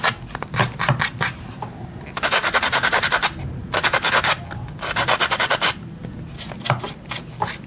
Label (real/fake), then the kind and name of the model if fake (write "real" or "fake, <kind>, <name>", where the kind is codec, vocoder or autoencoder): real